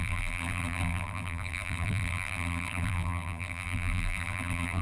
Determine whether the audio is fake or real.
fake